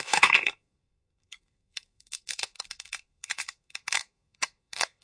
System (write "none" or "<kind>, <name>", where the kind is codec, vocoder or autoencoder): codec, SNAC